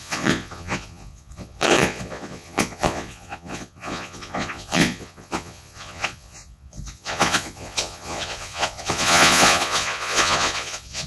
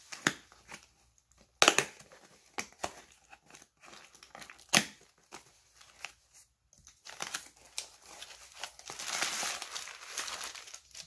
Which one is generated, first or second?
first